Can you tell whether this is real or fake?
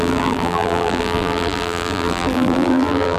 fake